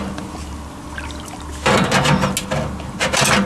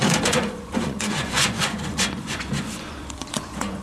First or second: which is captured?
first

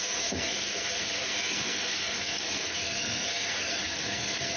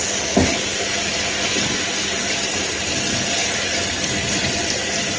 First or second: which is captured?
second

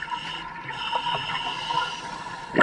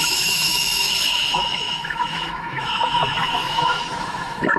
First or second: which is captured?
first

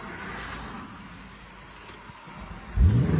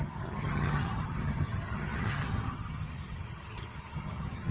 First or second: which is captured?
first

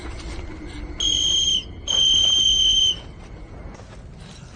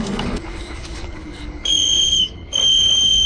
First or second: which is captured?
first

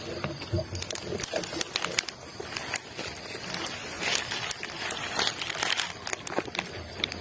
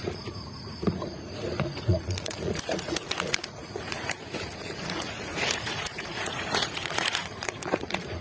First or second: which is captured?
first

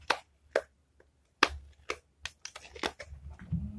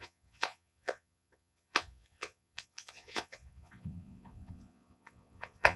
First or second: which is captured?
first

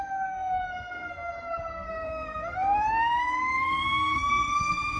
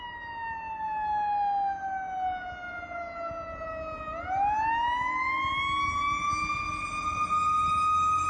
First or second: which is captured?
second